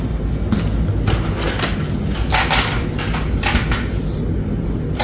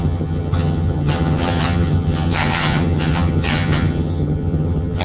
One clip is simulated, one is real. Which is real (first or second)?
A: first